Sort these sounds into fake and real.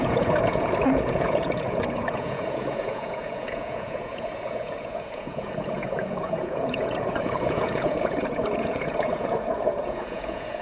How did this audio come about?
fake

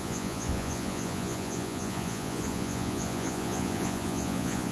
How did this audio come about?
fake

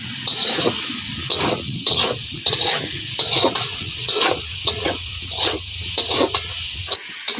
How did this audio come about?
fake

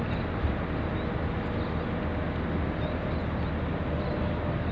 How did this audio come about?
real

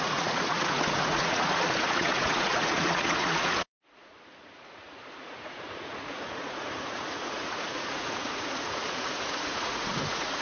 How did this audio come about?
fake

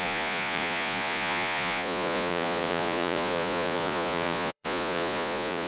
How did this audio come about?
fake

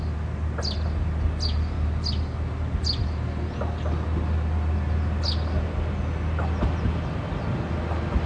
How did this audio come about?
real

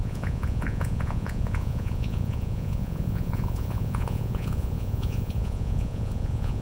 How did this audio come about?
fake